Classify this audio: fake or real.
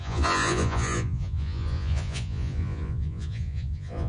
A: fake